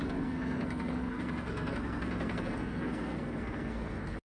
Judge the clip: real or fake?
fake